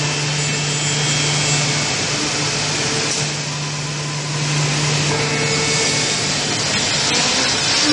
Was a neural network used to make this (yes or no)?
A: no